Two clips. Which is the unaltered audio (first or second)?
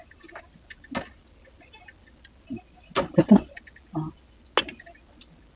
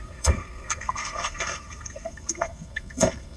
first